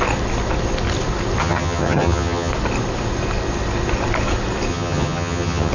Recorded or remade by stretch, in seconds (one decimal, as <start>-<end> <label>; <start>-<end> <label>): 0.0-1.4 recorded; 1.4-2.5 remade; 2.5-4.7 recorded; 4.7-5.7 remade